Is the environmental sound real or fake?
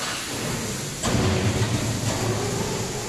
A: real